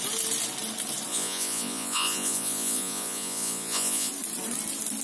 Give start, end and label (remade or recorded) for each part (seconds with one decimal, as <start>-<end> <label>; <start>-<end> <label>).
0.0-1.1 recorded; 1.1-4.1 remade; 4.1-5.0 recorded